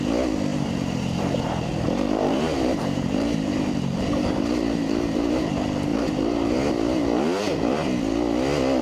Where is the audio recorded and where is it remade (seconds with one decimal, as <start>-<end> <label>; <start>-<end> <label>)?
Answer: 0.0-0.5 recorded; 0.5-5.5 remade; 5.5-5.9 recorded; 5.9-6.7 remade; 6.7-8.8 recorded